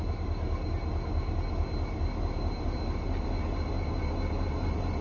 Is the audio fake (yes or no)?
no